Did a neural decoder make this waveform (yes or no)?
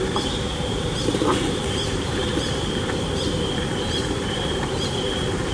yes